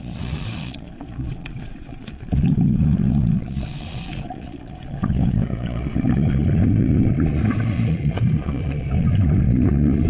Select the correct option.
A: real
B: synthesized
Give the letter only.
B